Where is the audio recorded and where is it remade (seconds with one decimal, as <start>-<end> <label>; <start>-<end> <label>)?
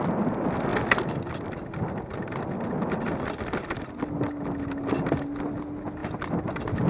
0.0-6.9 recorded